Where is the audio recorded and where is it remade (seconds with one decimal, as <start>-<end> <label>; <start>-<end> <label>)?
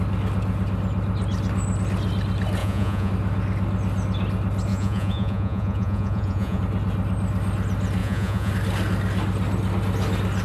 0.0-2.6 recorded; 2.6-3.1 remade; 3.1-4.7 recorded; 4.7-6.6 remade; 6.6-8.0 recorded; 8.0-8.5 remade; 8.5-10.4 recorded